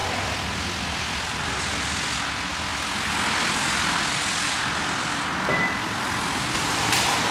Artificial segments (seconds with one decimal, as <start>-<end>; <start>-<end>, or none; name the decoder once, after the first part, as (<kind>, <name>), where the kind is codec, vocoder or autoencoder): none